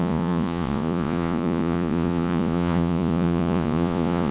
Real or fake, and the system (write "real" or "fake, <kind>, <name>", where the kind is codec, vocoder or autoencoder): fake, vocoder, Vocos